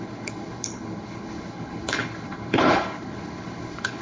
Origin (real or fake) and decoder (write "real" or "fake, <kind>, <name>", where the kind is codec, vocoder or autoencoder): fake, codec, HILCodec